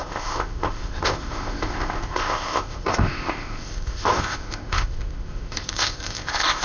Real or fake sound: fake